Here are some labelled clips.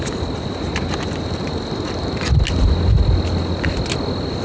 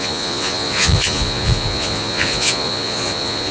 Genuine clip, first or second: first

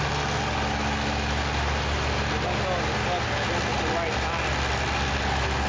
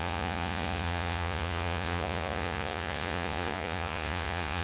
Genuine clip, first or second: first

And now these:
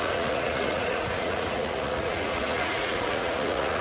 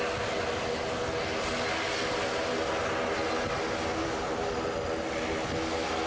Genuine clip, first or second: second